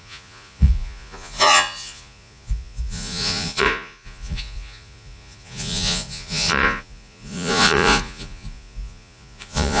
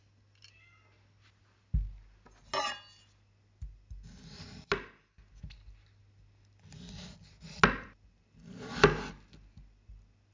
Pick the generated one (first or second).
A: first